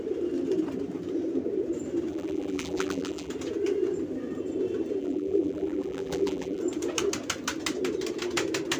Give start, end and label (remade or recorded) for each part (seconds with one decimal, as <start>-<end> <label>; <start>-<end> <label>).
0.0-2.1 recorded; 2.1-3.3 remade; 3.3-5.0 recorded; 5.0-6.6 remade; 6.6-8.8 recorded